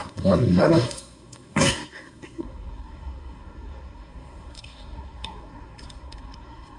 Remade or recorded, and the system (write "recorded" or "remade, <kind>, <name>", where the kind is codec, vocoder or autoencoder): remade, codec, SNAC